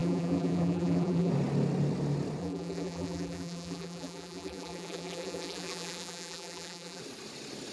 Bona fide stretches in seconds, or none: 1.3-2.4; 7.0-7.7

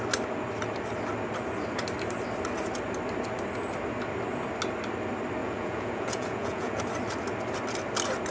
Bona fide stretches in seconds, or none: 0.0-5.4; 6.8-8.3

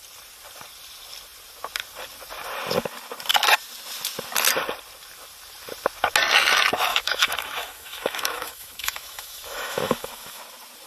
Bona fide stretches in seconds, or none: 0.0-6.9; 10.4-10.9

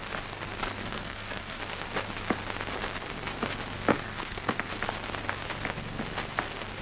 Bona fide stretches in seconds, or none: 0.0-0.8; 1.6-3.9; 4.7-6.8

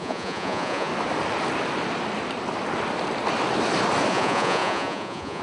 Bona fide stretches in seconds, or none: 0.9-4.1